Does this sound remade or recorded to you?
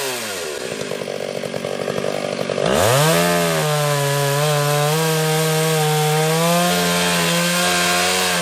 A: recorded